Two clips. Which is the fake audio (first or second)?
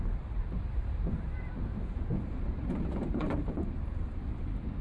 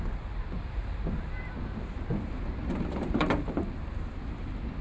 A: first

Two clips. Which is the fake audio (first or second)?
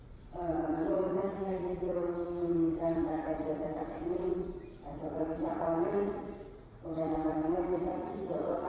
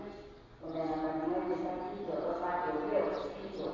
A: first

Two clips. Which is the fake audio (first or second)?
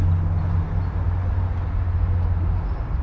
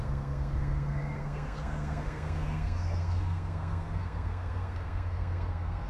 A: second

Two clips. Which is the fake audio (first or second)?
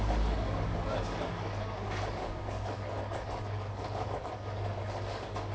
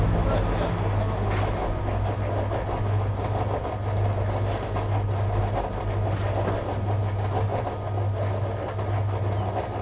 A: first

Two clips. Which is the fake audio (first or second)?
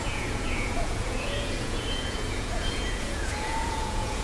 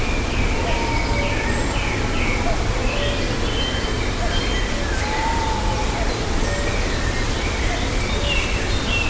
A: first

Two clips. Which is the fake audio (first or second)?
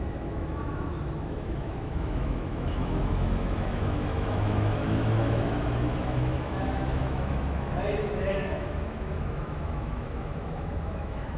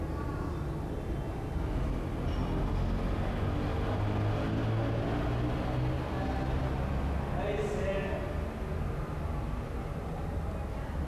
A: first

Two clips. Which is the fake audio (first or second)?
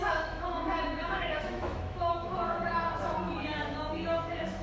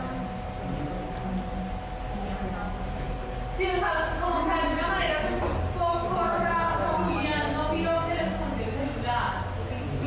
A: first